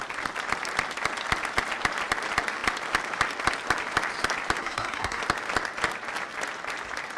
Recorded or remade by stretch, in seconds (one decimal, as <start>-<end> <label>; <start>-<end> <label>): 0.0-4.6 recorded; 4.6-5.2 remade; 5.2-7.2 recorded